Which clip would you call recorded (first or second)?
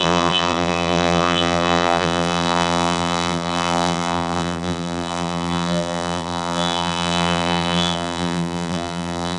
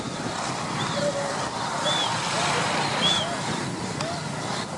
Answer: second